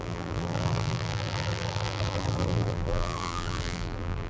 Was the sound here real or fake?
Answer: fake